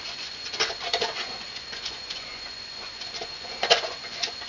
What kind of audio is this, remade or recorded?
remade